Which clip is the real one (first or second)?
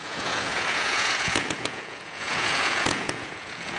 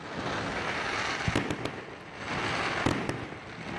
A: second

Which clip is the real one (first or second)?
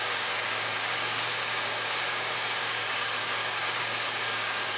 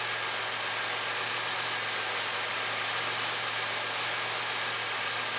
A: second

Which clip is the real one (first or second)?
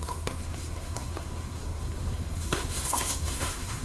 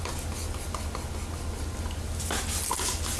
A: second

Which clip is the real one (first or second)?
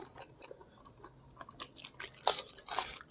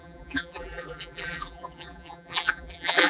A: first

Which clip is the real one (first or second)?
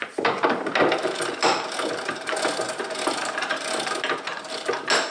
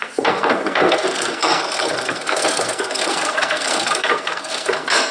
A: first